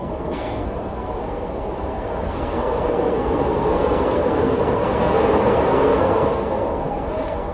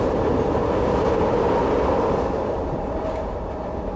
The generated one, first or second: first